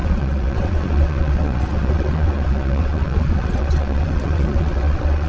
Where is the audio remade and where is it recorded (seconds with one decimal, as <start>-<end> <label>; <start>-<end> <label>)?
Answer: 0.0-5.3 remade